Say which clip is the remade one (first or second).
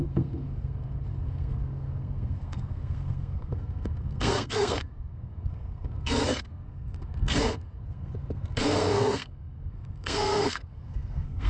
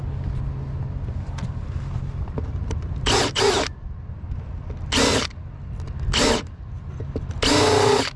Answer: first